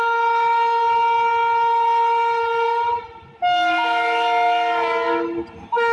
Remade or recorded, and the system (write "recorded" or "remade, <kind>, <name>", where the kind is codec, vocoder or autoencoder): recorded